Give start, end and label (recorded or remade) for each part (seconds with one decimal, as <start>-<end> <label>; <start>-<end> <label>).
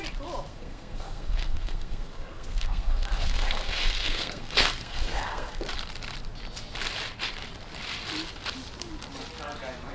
0.0-0.5 recorded; 0.5-5.6 remade; 5.6-9.9 recorded